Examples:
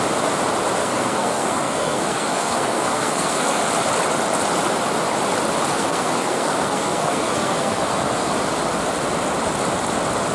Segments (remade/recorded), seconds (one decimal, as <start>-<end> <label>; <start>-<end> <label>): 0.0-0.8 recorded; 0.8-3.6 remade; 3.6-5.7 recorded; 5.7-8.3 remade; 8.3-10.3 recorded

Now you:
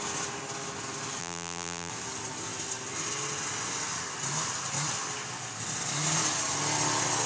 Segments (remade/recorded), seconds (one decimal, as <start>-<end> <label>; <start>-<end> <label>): 0.0-1.2 recorded; 1.2-1.9 remade; 1.9-7.3 recorded

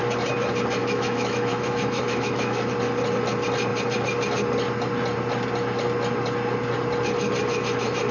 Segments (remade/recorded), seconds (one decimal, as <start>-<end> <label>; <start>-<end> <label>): 0.0-0.8 recorded; 0.8-2.7 remade; 2.7-8.1 recorded